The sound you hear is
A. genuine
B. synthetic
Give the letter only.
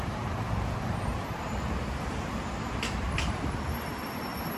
B